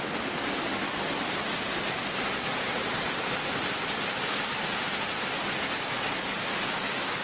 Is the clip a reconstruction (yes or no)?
no